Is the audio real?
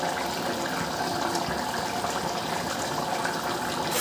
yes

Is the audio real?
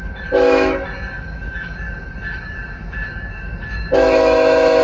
no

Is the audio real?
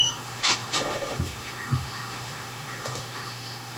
no